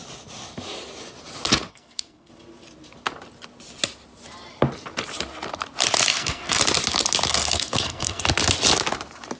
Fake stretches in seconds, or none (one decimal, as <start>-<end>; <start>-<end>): 1.7-2.3; 6.1-6.6; 7.3-8.2